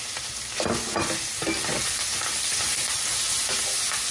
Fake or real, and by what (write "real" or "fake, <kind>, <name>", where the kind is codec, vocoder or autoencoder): real